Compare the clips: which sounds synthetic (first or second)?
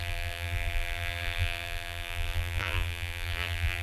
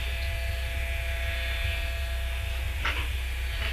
first